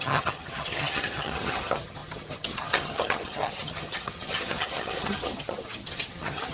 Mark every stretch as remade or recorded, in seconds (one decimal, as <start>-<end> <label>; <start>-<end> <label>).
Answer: 0.0-6.5 remade

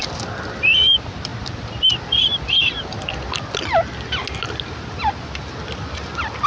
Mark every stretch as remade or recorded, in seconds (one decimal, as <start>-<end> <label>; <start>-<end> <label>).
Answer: 0.0-6.5 recorded